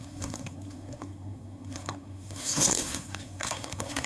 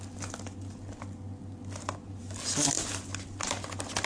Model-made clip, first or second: first